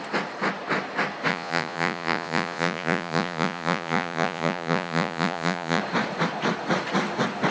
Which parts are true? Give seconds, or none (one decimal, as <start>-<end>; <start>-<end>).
0.0-1.3; 5.8-7.5